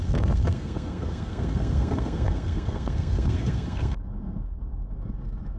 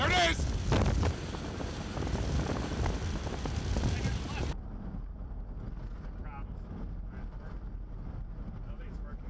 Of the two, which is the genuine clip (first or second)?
second